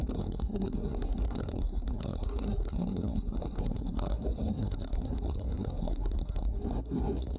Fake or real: fake